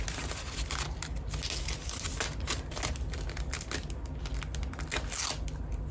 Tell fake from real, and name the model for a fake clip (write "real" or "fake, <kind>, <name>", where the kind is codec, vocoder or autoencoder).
real